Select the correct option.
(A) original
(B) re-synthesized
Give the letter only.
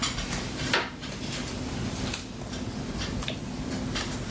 A